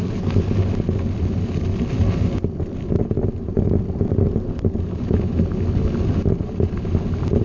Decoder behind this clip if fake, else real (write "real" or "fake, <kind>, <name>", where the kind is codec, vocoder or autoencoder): real